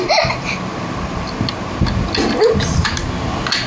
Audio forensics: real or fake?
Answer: real